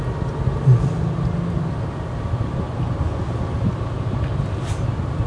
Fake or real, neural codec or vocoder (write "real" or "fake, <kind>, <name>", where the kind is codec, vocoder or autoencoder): real